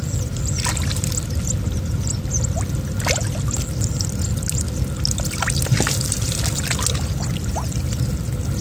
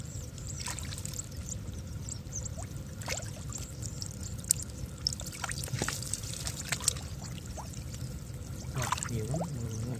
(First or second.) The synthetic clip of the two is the second